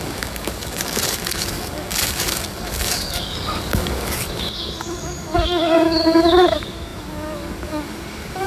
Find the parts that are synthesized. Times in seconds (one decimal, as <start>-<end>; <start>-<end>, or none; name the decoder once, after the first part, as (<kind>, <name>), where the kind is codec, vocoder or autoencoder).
0.0-8.5 (codec, DAC)